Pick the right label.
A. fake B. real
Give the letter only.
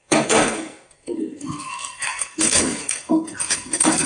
A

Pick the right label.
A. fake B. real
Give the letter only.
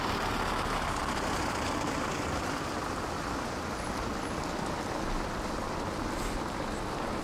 B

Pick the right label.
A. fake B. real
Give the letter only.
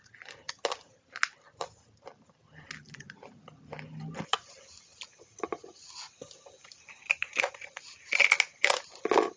B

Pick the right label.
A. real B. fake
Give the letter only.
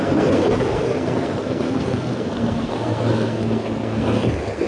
B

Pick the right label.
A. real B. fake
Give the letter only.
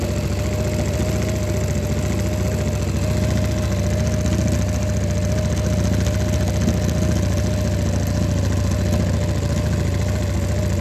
A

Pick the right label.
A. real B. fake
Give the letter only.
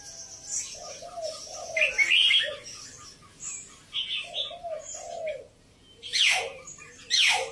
A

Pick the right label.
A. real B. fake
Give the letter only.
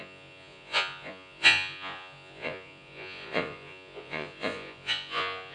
B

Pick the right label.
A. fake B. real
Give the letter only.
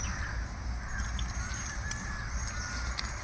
A